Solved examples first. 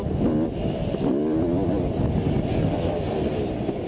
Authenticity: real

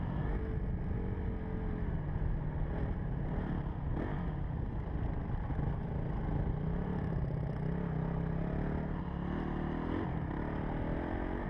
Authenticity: real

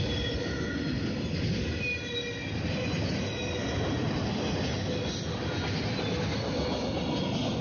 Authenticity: real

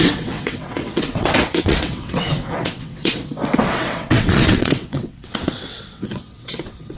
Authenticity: fake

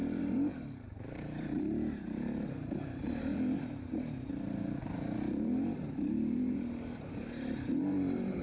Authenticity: fake